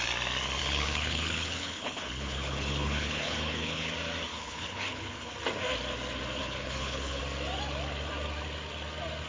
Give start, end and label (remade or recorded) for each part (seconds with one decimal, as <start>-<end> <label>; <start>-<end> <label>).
0.0-0.6 recorded; 0.6-3.9 remade; 3.9-4.3 recorded; 4.3-5.3 remade; 5.3-6.4 recorded; 6.4-7.2 remade; 7.2-9.3 recorded